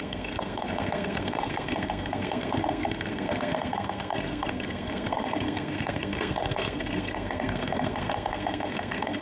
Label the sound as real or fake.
fake